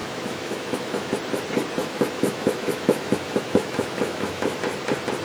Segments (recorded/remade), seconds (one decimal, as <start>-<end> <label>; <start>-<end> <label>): 0.0-1.1 remade; 1.1-1.8 recorded; 1.8-4.6 remade; 4.6-5.2 recorded

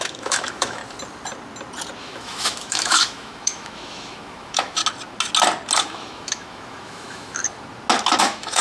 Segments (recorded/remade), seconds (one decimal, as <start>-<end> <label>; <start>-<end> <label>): 0.0-0.8 remade; 0.8-2.0 recorded; 2.0-4.8 remade; 4.8-5.8 recorded; 5.8-7.4 remade; 7.4-8.2 recorded; 8.2-8.6 remade

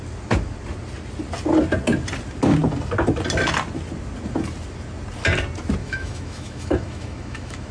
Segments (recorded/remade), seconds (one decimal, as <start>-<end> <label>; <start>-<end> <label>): 0.0-5.8 recorded; 5.8-7.7 remade

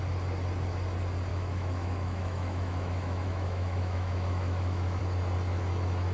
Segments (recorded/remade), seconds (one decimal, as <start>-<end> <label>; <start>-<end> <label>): 0.0-1.3 recorded; 1.3-5.0 remade; 5.0-6.1 recorded